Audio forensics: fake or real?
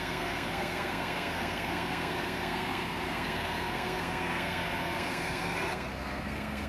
fake